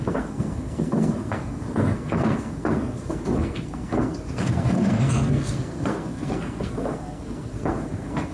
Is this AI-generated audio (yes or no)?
yes